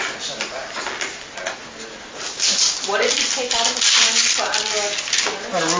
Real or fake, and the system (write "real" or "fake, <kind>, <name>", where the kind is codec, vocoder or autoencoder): real